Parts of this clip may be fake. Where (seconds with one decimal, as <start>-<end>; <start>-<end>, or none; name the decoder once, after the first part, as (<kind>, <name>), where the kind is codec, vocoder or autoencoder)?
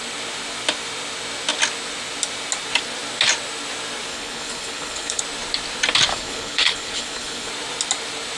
4.1-5.2 (codec, HILCodec); 6.1-7.5